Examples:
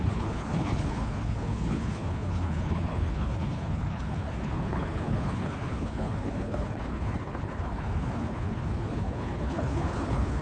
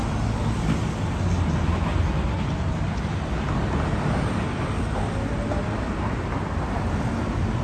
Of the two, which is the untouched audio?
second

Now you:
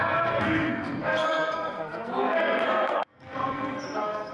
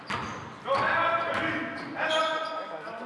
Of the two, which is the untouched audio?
second